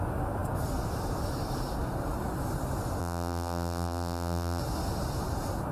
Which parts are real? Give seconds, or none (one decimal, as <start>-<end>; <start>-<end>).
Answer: 0.0-3.0; 4.6-5.7